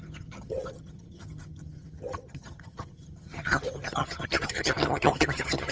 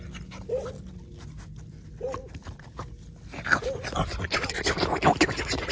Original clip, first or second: second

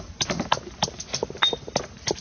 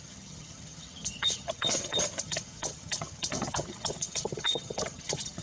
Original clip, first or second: first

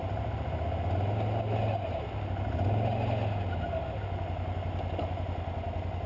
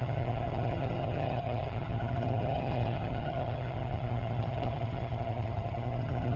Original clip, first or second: first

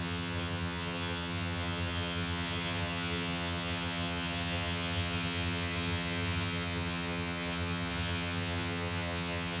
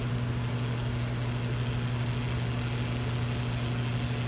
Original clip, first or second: second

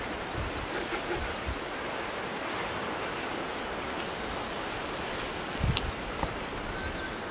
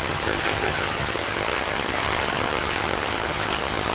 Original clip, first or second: first